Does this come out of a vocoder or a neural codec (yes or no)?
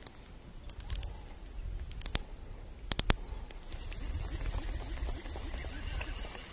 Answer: no